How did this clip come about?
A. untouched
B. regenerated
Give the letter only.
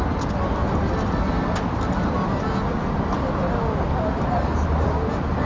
A